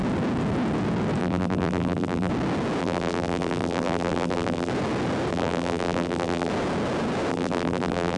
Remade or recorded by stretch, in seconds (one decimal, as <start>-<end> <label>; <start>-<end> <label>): 0.0-1.2 recorded; 1.2-2.3 remade; 2.3-2.8 recorded; 2.8-4.7 remade; 4.7-5.3 recorded; 5.3-6.5 remade; 6.5-7.3 recorded; 7.3-8.2 remade